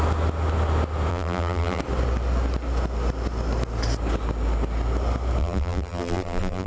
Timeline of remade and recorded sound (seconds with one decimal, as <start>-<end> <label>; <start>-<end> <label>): 0.0-1.1 recorded; 1.1-1.8 remade; 1.8-5.4 recorded; 5.4-6.7 remade